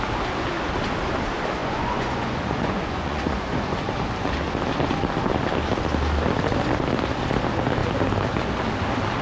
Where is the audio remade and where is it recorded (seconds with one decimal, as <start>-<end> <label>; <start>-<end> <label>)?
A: 0.0-1.6 recorded; 1.6-3.9 remade; 3.9-9.2 recorded